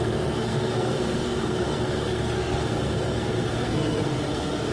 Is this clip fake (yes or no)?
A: yes